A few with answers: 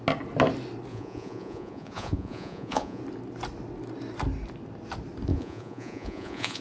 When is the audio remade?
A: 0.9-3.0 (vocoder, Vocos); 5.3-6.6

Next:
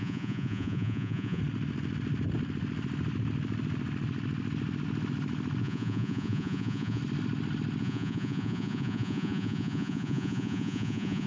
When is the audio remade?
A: 0.0-1.4 (vocoder, Vocos); 5.6-7.0; 7.8-11.3